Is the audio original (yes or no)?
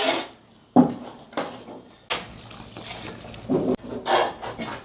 yes